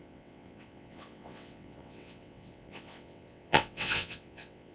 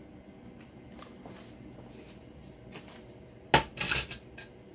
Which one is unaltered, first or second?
second